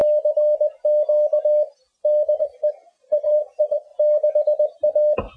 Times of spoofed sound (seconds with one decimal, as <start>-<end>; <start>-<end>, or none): 2.4-3.9